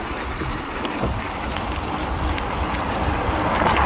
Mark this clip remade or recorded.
remade